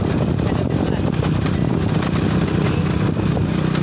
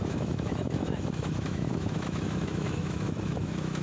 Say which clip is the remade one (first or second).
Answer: second